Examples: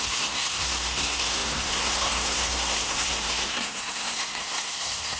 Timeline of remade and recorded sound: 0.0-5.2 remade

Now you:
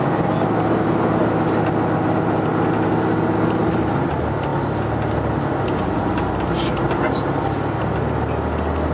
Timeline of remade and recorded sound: 0.0-8.9 recorded

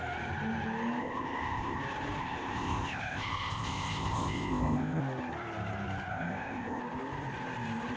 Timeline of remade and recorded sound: 0.0-1.0 recorded; 1.0-1.8 remade; 1.8-2.2 recorded; 2.2-5.0 remade; 5.0-6.1 recorded; 6.1-6.8 remade; 6.8-8.0 recorded

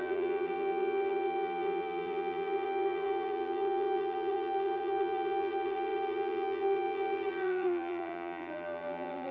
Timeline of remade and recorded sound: 0.0-9.3 remade